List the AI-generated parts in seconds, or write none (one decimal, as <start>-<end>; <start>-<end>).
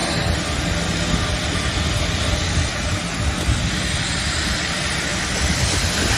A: 3.7-6.2